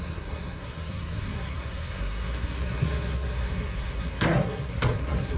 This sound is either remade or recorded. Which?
remade